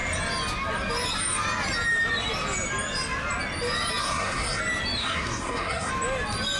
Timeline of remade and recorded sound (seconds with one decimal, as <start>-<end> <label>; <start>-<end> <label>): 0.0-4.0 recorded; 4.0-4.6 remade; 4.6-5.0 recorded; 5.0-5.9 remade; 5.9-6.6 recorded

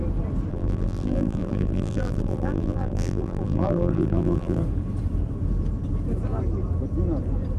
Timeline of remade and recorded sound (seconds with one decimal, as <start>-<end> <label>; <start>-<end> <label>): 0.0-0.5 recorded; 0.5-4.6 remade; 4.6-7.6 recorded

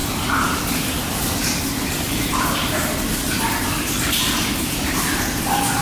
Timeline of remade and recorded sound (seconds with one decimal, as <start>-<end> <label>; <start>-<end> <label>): 0.0-5.8 recorded